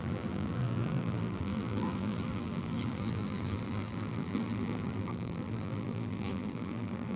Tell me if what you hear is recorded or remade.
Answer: remade